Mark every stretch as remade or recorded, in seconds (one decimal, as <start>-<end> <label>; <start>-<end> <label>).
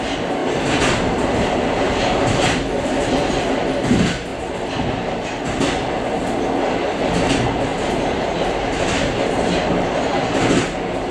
0.0-0.4 recorded; 0.4-3.4 remade; 3.4-7.7 recorded; 7.7-9.3 remade; 9.3-11.1 recorded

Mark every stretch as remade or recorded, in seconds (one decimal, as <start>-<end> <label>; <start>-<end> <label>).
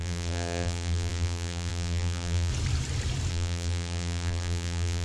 0.0-2.5 remade; 2.5-3.3 recorded; 3.3-5.0 remade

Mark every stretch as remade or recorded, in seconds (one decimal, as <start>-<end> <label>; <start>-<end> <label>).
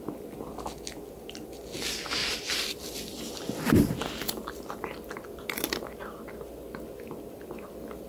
0.0-2.2 recorded; 2.2-5.4 remade; 5.4-8.1 recorded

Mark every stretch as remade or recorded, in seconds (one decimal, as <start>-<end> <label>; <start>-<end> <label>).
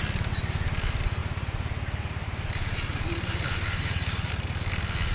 0.0-1.2 recorded; 1.2-4.3 remade; 4.3-5.1 recorded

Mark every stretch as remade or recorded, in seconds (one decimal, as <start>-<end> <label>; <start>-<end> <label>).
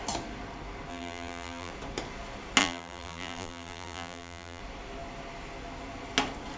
0.0-0.9 recorded; 0.9-1.7 remade; 1.7-2.6 recorded; 2.6-4.6 remade; 4.6-6.6 recorded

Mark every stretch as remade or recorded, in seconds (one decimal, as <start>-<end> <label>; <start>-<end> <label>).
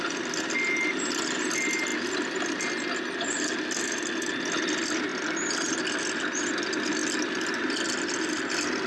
0.0-7.0 recorded; 7.0-8.4 remade; 8.4-8.9 recorded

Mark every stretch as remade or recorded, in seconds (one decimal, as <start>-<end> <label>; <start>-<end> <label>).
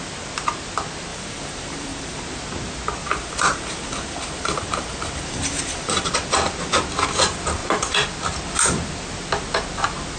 0.0-1.1 recorded; 1.1-2.2 remade; 2.2-3.0 recorded; 3.0-6.1 remade; 6.1-10.2 recorded